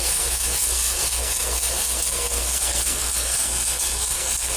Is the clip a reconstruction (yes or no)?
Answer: yes